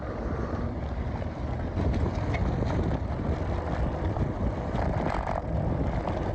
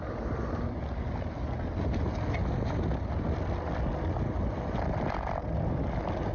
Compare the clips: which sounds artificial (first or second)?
first